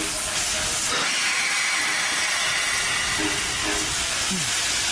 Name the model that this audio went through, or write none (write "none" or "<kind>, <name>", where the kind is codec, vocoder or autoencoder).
none